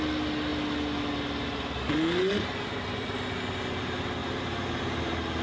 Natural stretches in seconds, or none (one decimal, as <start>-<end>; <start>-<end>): 0.0-4.2; 5.0-5.4